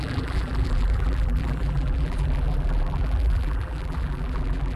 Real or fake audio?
fake